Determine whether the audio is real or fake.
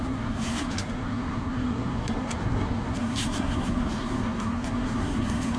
fake